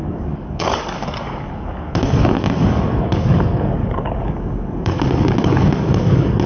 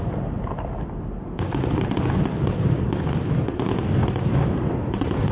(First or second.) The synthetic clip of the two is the first